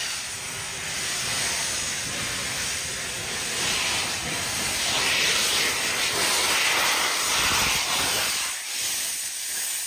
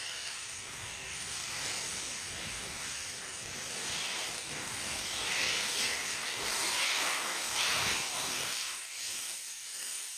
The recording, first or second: first